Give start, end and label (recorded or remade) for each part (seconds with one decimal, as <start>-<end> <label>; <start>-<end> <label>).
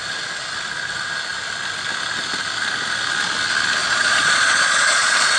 0.0-3.8 recorded; 3.8-5.4 remade